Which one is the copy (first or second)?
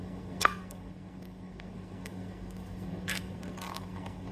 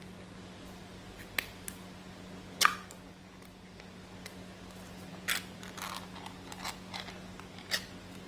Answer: first